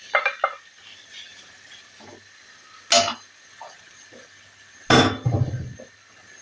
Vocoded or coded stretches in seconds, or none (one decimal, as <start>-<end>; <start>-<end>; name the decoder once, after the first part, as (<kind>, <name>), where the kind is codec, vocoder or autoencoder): none